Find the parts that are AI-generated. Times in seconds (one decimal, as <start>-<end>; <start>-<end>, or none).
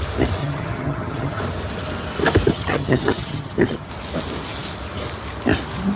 0.4-1.4; 2.5-3.9